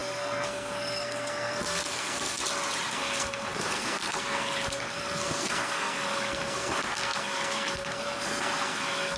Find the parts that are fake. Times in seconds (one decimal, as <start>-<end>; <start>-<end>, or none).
0.0-2.4; 2.9-9.2